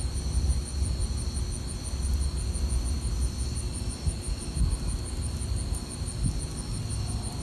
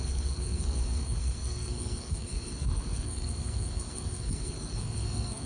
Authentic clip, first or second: first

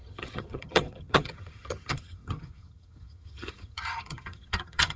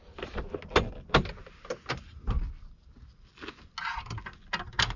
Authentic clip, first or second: second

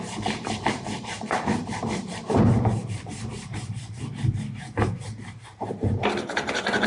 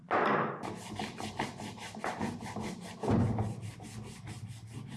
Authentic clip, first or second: second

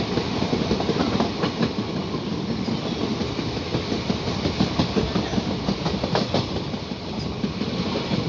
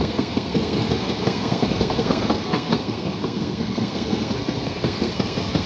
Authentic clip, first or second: first